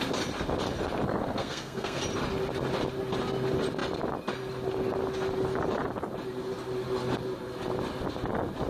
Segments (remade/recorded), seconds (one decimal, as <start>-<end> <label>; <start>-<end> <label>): 0.0-1.2 recorded; 1.2-2.0 remade; 2.0-8.7 recorded